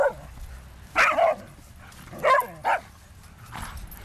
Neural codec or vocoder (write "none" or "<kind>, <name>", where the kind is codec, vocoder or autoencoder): none